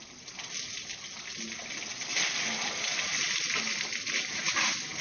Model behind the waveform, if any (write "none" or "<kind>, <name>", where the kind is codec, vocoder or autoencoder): none